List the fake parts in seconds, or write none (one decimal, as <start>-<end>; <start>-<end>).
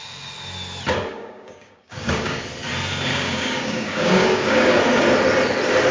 1.1-2.4; 3.1-4.8